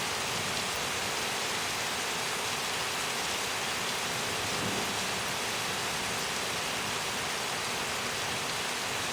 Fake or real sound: real